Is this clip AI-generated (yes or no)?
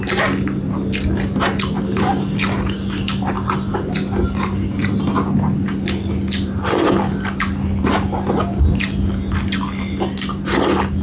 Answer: no